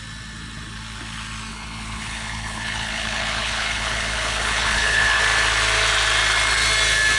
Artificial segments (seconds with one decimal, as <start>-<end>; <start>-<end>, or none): 1.5-5.2